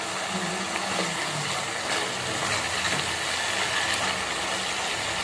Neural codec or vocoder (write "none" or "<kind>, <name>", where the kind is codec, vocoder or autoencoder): none